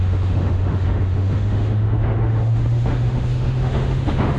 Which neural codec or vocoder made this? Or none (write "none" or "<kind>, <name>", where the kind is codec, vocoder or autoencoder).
autoencoder, DAC-VAE